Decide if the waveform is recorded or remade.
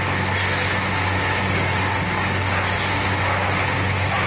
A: recorded